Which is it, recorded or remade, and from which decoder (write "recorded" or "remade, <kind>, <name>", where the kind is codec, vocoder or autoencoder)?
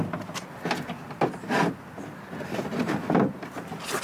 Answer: recorded